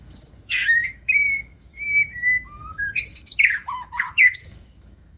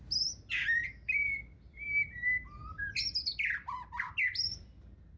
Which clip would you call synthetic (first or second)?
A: first